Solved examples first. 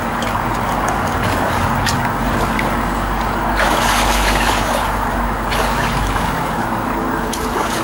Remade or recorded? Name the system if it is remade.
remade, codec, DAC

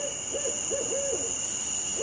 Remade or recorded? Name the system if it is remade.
recorded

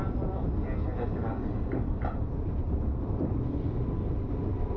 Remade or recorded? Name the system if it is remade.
recorded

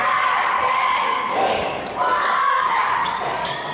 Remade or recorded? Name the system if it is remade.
remade, codec, DAC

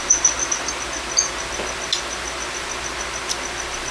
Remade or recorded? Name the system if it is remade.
recorded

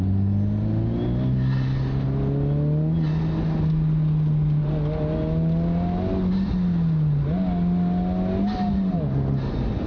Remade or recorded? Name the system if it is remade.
recorded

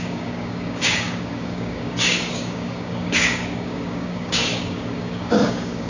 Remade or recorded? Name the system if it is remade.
remade, codec, DAC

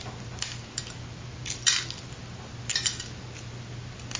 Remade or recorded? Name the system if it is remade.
recorded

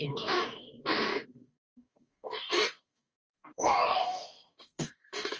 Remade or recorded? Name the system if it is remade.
remade, codec, DAC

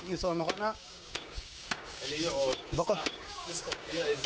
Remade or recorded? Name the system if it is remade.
remade, codec, DAC